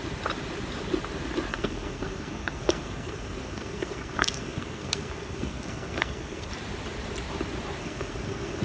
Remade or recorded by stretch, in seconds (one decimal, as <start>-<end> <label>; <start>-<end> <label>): 0.0-1.5 recorded; 1.5-6.5 remade; 6.5-7.8 recorded; 7.8-8.6 remade